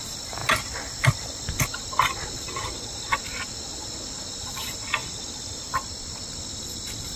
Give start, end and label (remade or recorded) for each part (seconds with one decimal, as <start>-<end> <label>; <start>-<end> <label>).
0.0-5.0 recorded; 5.0-5.5 remade; 5.5-7.2 recorded